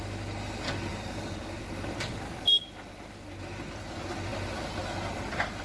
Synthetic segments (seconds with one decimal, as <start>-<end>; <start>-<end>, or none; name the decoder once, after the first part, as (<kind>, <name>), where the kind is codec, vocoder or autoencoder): 0.9-1.6 (codec, DAC)